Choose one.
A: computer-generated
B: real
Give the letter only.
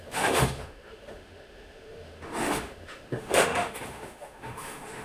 A